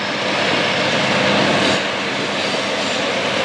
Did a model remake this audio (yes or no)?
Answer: no